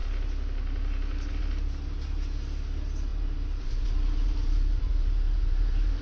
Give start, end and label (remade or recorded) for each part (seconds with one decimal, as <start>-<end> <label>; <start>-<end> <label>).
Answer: 0.0-3.1 recorded; 3.1-6.0 remade

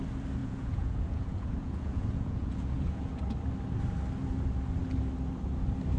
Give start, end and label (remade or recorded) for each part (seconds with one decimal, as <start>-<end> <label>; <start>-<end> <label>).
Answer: 0.0-0.4 recorded; 0.4-3.2 remade; 3.2-6.0 recorded

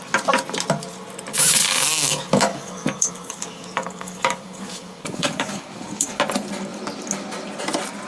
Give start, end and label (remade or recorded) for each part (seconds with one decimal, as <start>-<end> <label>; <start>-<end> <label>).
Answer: 0.0-1.3 recorded; 1.3-6.2 remade; 6.2-8.1 recorded

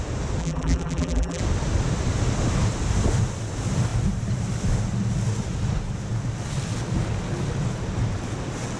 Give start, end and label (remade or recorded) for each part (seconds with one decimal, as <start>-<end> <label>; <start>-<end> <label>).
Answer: 0.0-0.4 recorded; 0.4-1.4 remade; 1.4-8.8 recorded

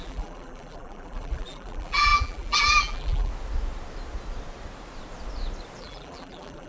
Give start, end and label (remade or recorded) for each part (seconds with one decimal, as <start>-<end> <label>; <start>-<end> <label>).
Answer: 0.0-3.3 remade; 3.3-5.8 recorded; 5.8-6.7 remade